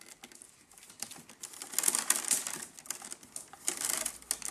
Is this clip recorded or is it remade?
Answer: recorded